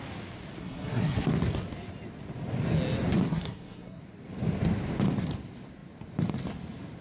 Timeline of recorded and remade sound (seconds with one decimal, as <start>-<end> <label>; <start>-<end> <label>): 0.0-0.6 recorded; 0.6-1.3 remade; 1.3-3.3 recorded; 3.3-4.0 remade; 4.0-7.0 recorded